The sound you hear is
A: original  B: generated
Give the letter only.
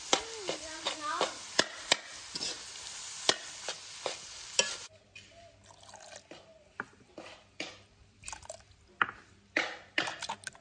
A